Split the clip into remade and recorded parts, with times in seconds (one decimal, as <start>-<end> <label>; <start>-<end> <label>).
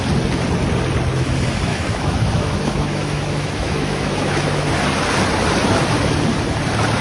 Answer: 0.0-1.7 recorded; 1.7-4.7 remade; 4.7-7.0 recorded